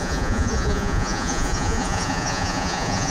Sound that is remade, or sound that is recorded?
remade